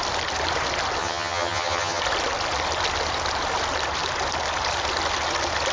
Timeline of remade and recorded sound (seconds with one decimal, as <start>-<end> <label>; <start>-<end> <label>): 0.0-1.0 recorded; 1.0-2.0 remade; 2.0-5.7 recorded